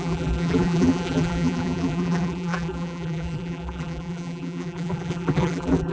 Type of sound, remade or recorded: remade